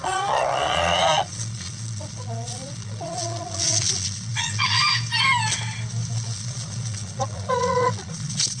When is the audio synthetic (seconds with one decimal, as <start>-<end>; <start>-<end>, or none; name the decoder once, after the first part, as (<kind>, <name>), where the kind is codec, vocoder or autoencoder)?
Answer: 0.0-4.9 (vocoder, Vocos); 6.1-8.6

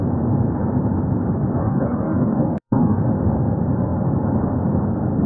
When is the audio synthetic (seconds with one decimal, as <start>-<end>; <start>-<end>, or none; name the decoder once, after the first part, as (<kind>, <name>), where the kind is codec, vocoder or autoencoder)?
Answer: 1.6-3.0 (codec, DAC)

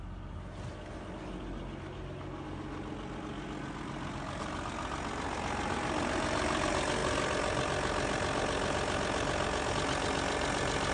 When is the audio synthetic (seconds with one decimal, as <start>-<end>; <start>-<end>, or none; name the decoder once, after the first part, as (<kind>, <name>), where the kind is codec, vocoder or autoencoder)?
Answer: none

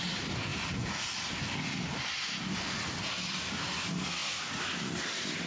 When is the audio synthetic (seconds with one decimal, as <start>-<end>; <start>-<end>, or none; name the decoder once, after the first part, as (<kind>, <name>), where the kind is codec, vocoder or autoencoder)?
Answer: none

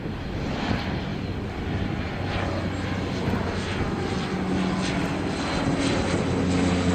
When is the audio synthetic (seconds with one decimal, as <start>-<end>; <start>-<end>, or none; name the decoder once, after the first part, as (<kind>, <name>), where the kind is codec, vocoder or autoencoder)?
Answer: none

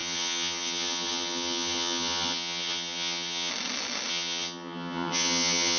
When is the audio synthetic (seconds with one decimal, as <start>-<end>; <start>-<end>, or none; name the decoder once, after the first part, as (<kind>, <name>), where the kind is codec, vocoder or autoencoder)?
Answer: 0.0-3.5 (vocoder, HiFi-GAN); 4.1-5.8